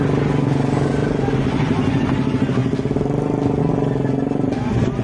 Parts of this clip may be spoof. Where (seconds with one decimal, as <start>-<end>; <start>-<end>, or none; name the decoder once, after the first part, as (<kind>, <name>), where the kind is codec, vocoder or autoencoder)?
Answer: none